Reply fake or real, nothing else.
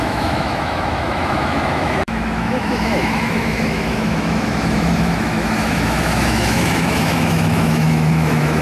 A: fake